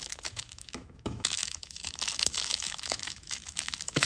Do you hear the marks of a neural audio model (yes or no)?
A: yes